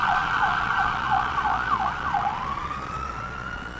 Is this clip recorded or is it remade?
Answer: remade